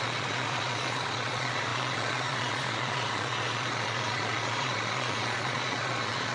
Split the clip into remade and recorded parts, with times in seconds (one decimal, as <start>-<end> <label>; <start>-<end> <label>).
0.0-6.3 remade